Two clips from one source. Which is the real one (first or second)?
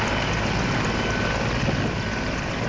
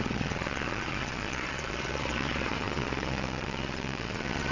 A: first